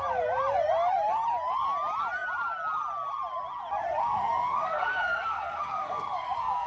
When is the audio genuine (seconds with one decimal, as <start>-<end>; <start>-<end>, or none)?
0.0-4.0